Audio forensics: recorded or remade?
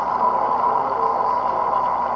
recorded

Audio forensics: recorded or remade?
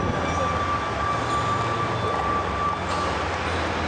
recorded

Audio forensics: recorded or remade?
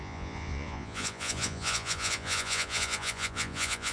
remade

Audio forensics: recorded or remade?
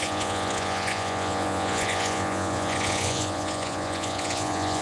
remade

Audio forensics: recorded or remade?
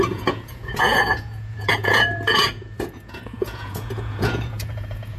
remade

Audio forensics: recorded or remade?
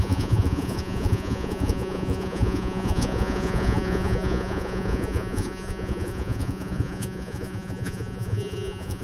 remade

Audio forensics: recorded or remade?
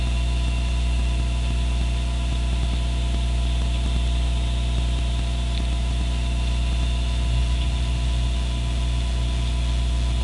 recorded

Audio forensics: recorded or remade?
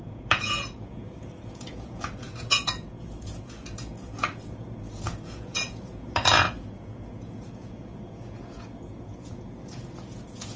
remade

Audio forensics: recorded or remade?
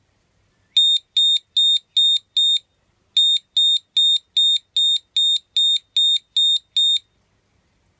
recorded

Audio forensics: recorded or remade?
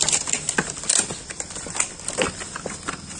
recorded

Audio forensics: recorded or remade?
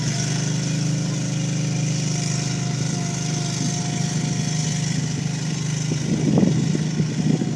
recorded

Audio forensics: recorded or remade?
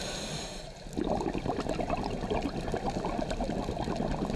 recorded